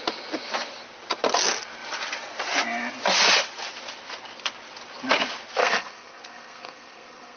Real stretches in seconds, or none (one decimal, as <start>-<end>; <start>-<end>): 0.0-5.6

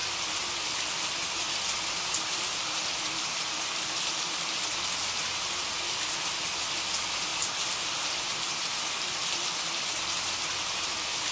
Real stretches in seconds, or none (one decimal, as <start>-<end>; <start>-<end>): 0.0-11.3

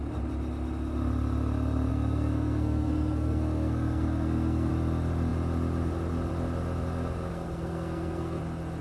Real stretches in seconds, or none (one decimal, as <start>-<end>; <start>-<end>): 0.0-1.9; 4.7-7.3; 8.4-8.8

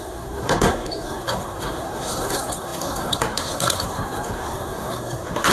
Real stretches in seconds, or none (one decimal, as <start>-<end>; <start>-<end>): none

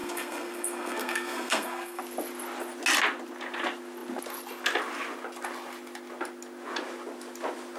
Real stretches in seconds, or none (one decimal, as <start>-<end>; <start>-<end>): 2.0-7.8

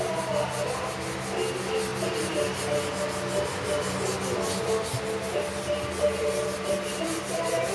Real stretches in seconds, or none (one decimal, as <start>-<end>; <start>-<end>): 0.0-7.7

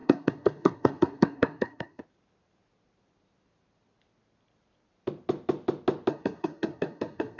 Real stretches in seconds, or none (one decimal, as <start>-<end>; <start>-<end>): 2.0-6.1

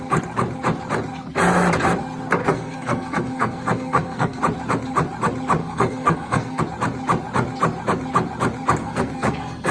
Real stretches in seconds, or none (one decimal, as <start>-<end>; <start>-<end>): 0.0-2.4; 4.4-5.6; 6.6-8.8